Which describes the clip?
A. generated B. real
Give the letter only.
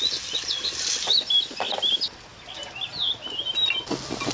B